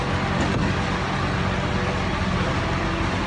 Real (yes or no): yes